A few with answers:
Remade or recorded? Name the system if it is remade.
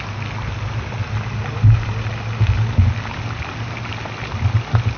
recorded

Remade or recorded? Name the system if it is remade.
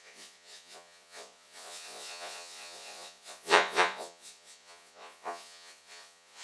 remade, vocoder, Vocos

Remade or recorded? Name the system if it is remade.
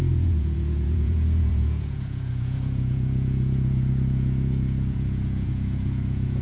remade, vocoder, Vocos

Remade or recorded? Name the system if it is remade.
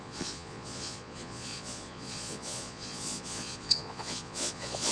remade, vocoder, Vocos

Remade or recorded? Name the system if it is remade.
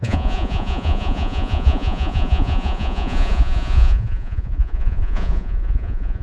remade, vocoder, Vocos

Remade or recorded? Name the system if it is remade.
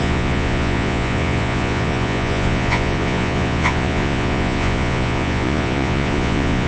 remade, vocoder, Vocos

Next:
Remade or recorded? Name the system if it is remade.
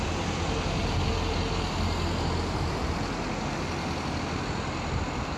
recorded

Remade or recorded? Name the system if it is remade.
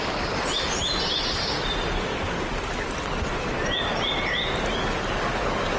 recorded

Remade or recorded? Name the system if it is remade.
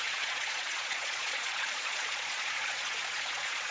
remade, vocoder, Vocos